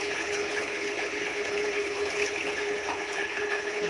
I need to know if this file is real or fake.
fake